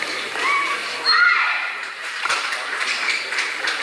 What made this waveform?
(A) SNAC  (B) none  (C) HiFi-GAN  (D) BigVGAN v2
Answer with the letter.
D